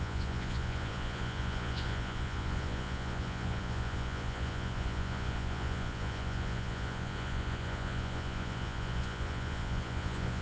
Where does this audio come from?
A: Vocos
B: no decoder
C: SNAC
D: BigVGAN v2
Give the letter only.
A